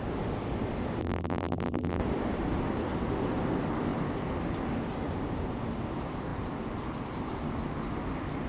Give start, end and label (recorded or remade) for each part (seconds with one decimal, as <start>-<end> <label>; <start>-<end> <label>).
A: 0.0-1.0 recorded; 1.0-2.0 remade; 2.0-8.5 recorded